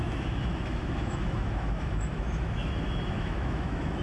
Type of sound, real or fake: fake